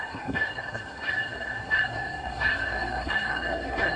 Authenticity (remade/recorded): remade